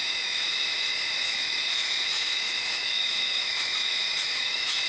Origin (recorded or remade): remade